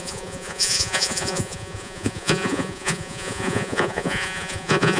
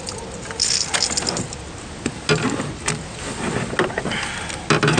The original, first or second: second